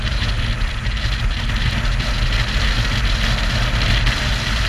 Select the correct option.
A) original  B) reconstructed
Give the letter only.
A